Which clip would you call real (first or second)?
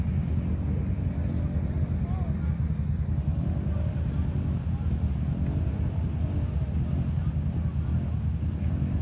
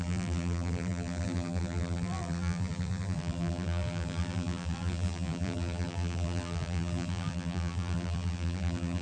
first